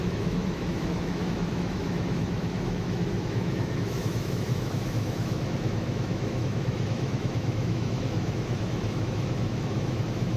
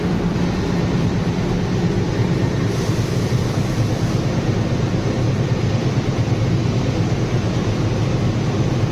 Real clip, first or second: second